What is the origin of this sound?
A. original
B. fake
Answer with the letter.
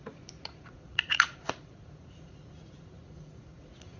B